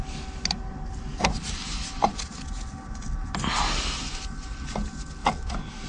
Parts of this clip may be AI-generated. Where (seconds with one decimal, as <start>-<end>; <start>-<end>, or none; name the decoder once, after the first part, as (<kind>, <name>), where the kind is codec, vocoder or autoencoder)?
none